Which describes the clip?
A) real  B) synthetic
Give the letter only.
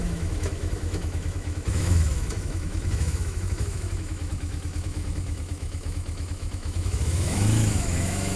B